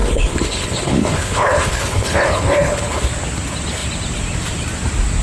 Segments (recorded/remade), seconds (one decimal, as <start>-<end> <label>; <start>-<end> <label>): 0.0-3.1 remade; 3.1-5.2 recorded